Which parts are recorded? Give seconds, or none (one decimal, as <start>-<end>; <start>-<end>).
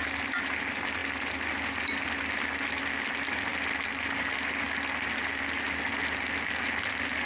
0.0-1.0; 2.8-3.5; 4.2-7.3